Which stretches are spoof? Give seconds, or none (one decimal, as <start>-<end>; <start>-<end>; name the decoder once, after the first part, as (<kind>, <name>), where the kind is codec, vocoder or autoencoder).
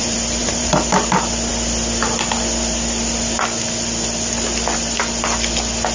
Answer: 0.0-0.7 (vocoder, BigVGAN v2)